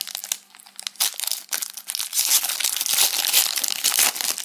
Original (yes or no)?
yes